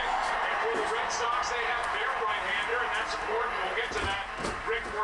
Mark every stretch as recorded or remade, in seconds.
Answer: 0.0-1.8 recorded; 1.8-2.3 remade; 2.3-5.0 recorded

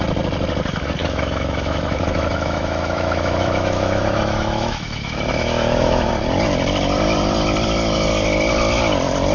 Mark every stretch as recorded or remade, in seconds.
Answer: 0.0-1.0 recorded; 1.0-6.1 remade; 6.1-9.3 recorded

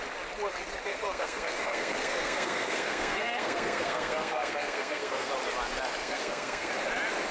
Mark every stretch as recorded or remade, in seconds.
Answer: 0.0-0.9 recorded; 0.9-5.3 remade; 5.3-6.0 recorded; 6.0-6.7 remade; 6.7-7.3 recorded